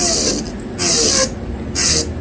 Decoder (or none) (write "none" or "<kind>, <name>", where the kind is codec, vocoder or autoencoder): none